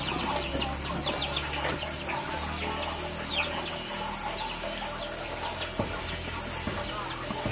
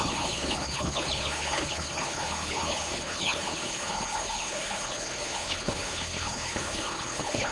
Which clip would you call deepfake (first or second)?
second